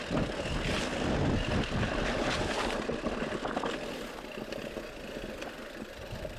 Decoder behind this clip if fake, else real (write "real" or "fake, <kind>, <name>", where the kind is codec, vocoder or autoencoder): real